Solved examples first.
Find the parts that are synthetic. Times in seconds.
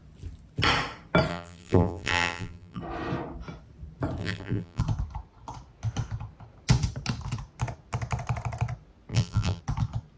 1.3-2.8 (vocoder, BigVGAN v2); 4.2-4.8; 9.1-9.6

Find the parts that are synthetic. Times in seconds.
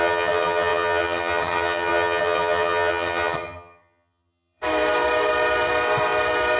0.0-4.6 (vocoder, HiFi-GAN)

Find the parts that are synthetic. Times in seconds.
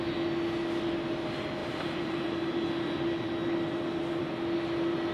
1.6-2.5 (vocoder, BigVGAN v2)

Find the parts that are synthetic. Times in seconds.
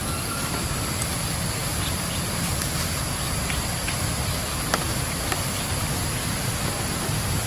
none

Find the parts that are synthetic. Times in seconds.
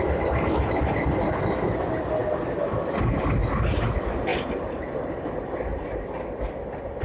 5.7-6.4 (vocoder, BigVGAN v2)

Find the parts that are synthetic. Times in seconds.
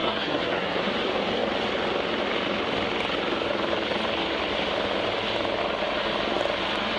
0.0-0.8 (codec, SNAC)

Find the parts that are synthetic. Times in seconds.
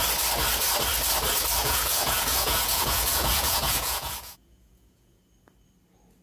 1.6-5.2 (vocoder, Vocos)